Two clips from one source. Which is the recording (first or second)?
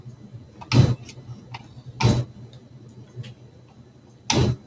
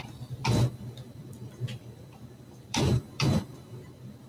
first